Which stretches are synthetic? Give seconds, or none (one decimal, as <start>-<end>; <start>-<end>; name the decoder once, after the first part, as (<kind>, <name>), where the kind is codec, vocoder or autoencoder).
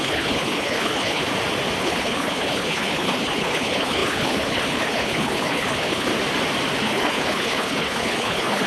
0.0-1.2 (codec, HILCodec); 1.8-6.1; 6.8-8.7